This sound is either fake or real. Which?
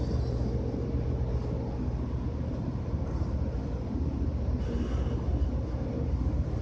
real